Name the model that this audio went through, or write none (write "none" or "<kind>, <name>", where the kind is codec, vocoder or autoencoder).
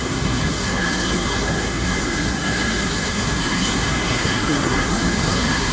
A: codec, SNAC